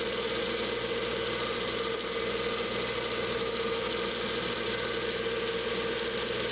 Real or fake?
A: real